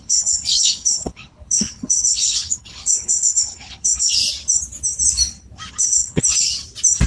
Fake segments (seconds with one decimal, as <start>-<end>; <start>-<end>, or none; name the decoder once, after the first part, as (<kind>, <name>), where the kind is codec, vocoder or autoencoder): 0.0-4.2 (codec, HILCodec); 5.7-6.2